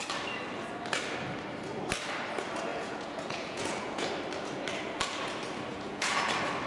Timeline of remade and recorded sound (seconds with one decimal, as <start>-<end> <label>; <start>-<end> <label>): 0.0-2.7 recorded; 2.7-4.1 remade; 4.1-5.7 recorded; 5.7-6.3 remade; 6.3-6.7 recorded